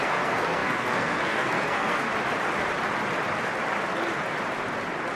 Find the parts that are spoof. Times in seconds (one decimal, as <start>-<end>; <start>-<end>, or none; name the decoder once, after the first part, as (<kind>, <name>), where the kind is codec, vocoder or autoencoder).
0.0-2.1 (codec, SNAC)